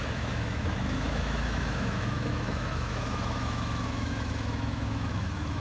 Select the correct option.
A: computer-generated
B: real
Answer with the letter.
A